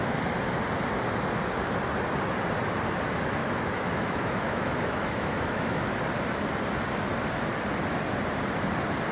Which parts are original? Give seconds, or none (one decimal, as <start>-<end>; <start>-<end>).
0.0-3.4; 5.8-9.1